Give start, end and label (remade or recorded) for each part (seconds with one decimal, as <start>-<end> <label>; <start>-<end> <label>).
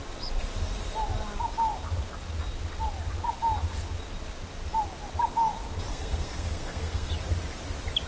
0.0-5.9 recorded; 5.9-7.1 remade; 7.1-8.1 recorded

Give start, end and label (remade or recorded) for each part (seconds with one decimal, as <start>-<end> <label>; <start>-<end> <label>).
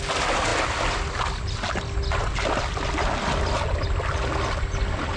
0.0-5.2 recorded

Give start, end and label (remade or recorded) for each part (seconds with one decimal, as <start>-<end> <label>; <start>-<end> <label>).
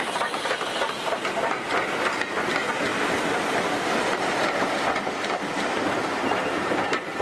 0.0-7.2 recorded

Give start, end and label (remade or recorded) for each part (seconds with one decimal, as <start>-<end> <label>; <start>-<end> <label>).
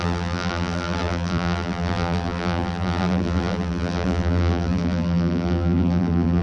0.0-6.4 remade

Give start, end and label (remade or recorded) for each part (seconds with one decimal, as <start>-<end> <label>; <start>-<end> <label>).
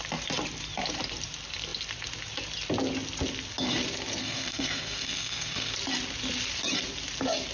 0.0-4.2 recorded; 4.2-5.7 remade; 5.7-7.5 recorded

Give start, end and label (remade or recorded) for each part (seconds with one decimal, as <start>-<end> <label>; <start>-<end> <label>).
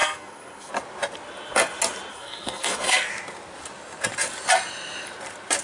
0.0-0.7 remade; 0.7-2.1 recorded; 2.1-3.1 remade; 3.1-5.6 recorded